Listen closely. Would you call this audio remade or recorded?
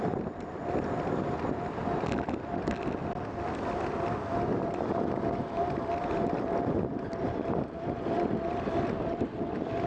recorded